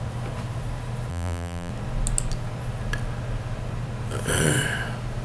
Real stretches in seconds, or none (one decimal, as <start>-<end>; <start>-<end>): 0.0-1.1; 1.7-5.2